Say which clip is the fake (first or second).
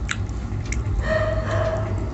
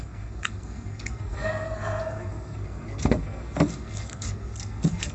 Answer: second